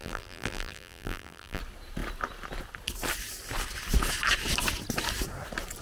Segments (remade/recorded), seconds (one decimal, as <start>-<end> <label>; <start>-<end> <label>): 0.0-1.6 remade; 1.6-5.8 recorded